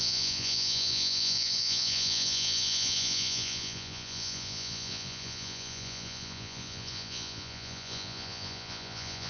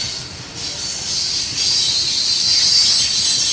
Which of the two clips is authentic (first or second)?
second